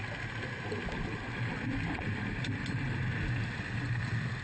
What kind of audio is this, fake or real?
real